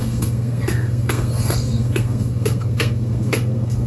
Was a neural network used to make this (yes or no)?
yes